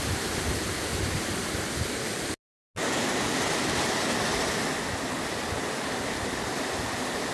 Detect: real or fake real